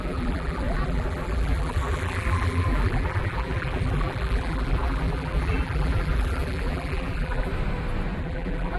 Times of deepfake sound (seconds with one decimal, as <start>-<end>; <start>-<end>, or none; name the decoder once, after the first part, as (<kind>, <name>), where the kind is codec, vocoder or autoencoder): 0.0-7.5 (vocoder, BigVGAN v2); 8.2-8.8